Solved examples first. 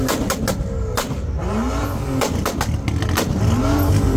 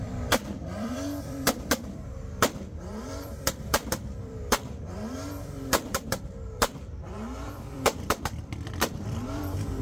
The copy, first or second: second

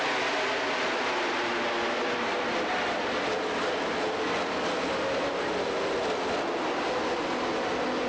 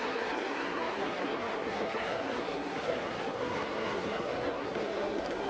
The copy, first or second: second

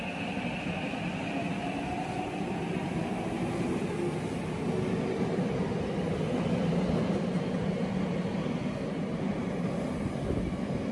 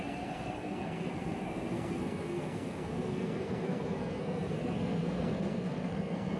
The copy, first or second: second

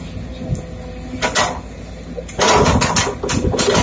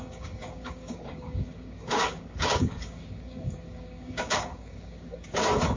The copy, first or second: second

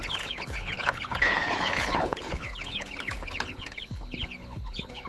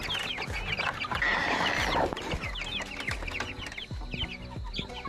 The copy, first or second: first